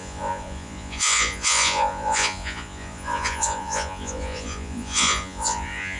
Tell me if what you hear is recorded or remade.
remade